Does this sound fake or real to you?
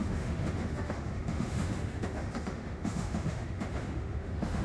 fake